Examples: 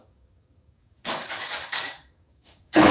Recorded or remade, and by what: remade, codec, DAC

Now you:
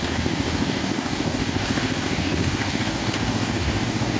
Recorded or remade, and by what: remade, codec, DAC